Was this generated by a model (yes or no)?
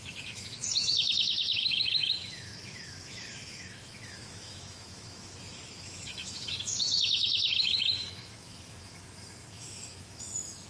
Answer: yes